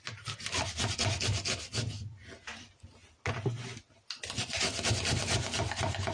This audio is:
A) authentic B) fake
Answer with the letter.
A